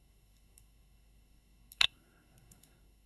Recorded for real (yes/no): no